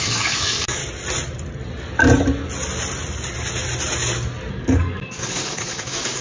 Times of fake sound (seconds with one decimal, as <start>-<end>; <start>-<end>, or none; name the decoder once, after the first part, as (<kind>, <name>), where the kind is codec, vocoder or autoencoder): 0.0-0.8 (codec, DAC); 4.5-6.2